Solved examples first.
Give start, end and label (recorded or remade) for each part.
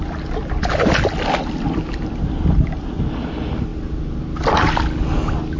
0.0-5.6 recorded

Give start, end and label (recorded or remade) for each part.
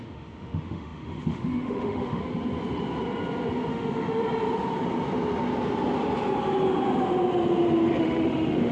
0.0-2.2 remade; 2.2-3.7 recorded; 3.7-4.2 remade; 4.2-8.0 recorded; 8.0-8.7 remade